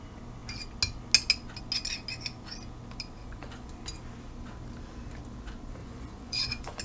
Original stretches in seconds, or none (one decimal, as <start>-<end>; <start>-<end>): 0.0-3.2; 3.7-5.8